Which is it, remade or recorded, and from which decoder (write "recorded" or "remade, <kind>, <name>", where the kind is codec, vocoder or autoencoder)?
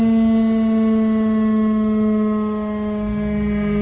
recorded